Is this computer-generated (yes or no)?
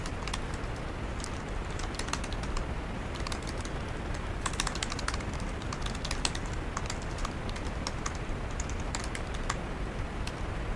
no